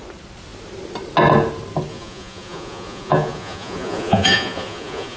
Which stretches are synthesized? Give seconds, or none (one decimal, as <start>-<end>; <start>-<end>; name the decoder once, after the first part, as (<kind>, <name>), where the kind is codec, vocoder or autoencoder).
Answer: 1.9-5.2 (vocoder, Vocos)